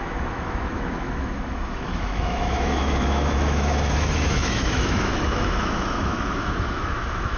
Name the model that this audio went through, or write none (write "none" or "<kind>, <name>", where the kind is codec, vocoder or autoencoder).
autoencoder, DAC-VAE